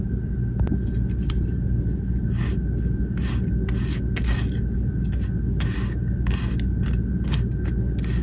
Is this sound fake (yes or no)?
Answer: no